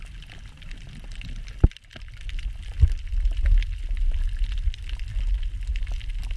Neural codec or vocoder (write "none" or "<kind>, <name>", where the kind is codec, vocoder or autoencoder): none